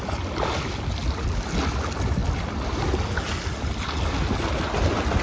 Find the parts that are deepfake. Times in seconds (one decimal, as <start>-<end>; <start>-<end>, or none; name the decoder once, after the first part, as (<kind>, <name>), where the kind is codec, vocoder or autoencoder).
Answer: none